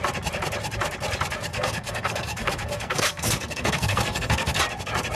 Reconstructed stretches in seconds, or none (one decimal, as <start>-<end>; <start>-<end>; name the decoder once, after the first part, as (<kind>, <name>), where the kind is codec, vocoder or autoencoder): 1.5-4.6 (codec, SNAC)